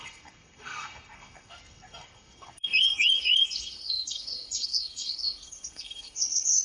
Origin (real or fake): fake